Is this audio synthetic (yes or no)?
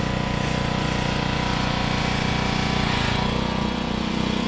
yes